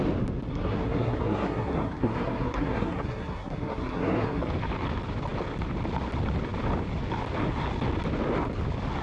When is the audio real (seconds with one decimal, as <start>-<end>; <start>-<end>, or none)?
0.0-0.5; 4.5-9.0